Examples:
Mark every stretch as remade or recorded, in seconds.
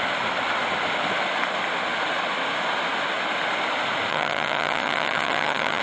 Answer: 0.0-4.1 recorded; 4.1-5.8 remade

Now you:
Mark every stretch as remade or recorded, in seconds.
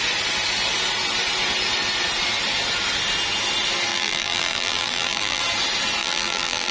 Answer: 0.0-3.9 recorded; 3.9-5.4 remade; 5.4-6.0 recorded; 6.0-6.7 remade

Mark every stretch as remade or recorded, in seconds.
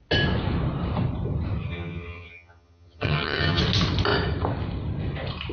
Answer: 0.0-1.7 recorded; 1.7-3.6 remade; 3.6-5.5 recorded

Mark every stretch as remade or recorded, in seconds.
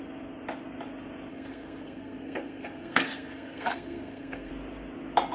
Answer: 0.0-1.3 recorded; 1.3-4.5 remade; 4.5-5.3 recorded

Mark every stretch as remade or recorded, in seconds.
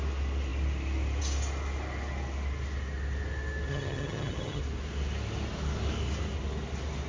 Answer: 0.0-3.7 recorded; 3.7-4.6 remade; 4.6-7.1 recorded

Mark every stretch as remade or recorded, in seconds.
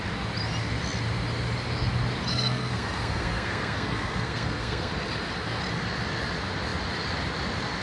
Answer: 0.0-2.3 recorded; 2.3-4.9 remade; 4.9-7.8 recorded